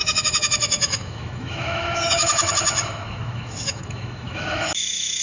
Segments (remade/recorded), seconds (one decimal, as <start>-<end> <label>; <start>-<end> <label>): 0.0-5.2 remade